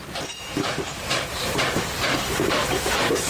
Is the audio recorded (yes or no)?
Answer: no